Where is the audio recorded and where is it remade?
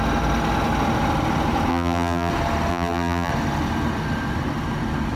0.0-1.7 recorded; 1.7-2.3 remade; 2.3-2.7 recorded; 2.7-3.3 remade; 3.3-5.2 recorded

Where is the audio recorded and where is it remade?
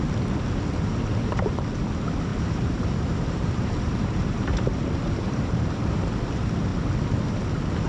0.0-0.9 recorded; 0.9-1.5 remade; 1.5-2.3 recorded; 2.3-6.2 remade; 6.2-7.9 recorded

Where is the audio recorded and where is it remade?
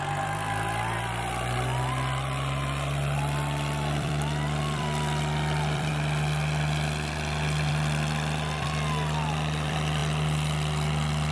0.0-5.9 remade; 5.9-7.7 recorded; 7.7-10.0 remade; 10.0-11.3 recorded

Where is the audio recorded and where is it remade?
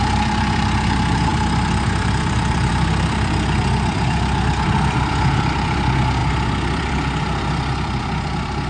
0.0-8.7 remade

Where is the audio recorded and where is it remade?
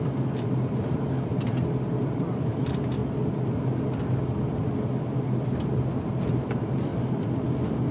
0.0-1.3 remade; 1.3-2.1 recorded; 2.1-3.0 remade; 3.0-6.4 recorded; 6.4-6.9 remade; 6.9-7.9 recorded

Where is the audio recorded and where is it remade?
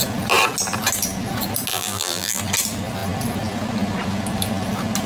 0.0-1.7 recorded; 1.7-2.4 remade; 2.4-5.1 recorded